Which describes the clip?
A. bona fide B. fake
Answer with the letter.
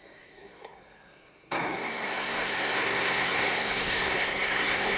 B